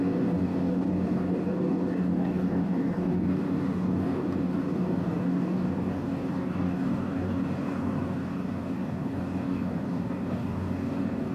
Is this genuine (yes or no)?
no